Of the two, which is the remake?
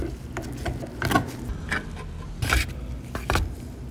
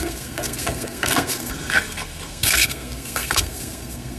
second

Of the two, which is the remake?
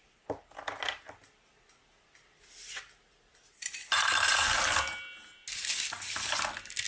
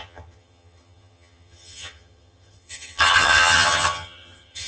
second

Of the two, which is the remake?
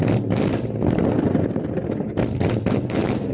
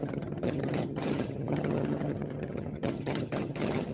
second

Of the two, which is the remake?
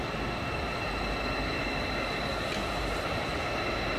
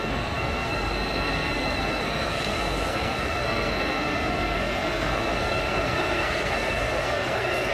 second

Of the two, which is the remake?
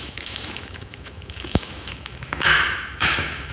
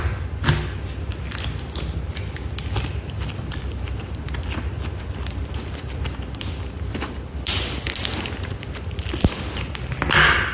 first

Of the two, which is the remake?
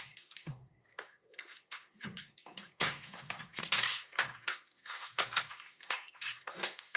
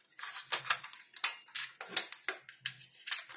first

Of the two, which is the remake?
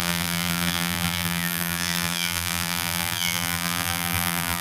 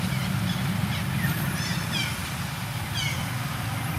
first